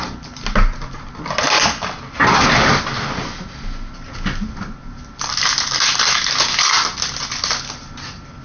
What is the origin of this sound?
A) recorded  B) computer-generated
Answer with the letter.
A